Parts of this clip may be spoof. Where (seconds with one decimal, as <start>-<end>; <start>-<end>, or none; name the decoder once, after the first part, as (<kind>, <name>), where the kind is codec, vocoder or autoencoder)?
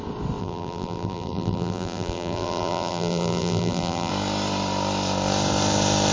0.4-4.1 (vocoder, BigVGAN v2)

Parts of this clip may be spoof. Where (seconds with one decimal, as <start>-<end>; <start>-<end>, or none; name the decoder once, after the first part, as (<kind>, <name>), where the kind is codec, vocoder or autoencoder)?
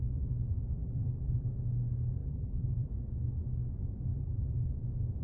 0.8-1.5 (vocoder, BigVGAN v2); 2.2-2.9; 4.1-4.7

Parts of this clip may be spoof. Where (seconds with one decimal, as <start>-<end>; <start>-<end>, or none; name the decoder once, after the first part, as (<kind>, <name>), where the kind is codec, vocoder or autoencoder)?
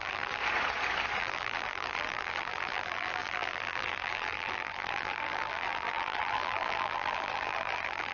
0.0-0.4 (vocoder, BigVGAN v2); 1.2-8.1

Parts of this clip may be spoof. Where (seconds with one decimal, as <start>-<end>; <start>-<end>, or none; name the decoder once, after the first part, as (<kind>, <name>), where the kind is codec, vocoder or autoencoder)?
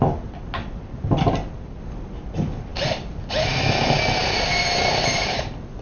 2.7-3.3 (vocoder, BigVGAN v2); 4.2-5.8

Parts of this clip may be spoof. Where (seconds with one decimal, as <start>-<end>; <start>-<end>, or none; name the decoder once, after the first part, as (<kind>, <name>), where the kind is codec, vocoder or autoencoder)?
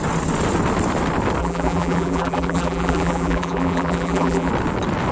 1.4-4.5 (vocoder, BigVGAN v2)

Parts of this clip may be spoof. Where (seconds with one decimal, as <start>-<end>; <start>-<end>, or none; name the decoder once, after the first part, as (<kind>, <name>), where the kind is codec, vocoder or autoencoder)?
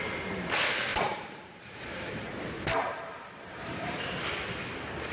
0.9-4.0 (vocoder, BigVGAN v2)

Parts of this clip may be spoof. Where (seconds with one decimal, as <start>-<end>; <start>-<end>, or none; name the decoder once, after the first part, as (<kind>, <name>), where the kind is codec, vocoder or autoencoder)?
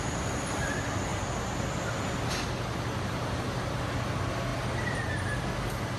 4.5-5.5 (vocoder, BigVGAN v2)